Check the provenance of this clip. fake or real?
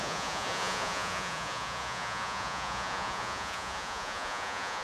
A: fake